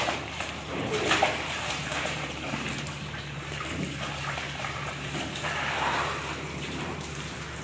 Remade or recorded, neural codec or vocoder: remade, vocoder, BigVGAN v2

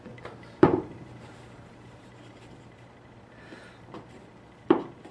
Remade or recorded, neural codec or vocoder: remade, vocoder, BigVGAN v2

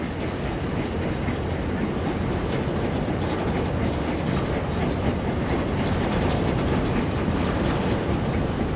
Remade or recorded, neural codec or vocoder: remade, vocoder, BigVGAN v2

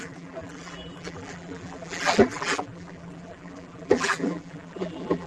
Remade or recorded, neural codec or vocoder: remade, vocoder, BigVGAN v2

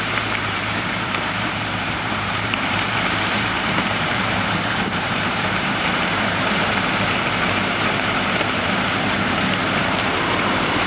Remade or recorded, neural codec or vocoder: remade, vocoder, BigVGAN v2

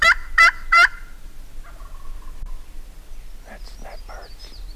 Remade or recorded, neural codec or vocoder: recorded